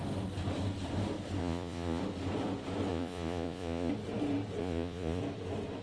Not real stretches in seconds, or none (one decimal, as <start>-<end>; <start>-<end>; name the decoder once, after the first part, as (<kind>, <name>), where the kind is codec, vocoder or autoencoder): 1.4-2.0 (vocoder, Vocos); 2.9-3.9; 4.6-5.2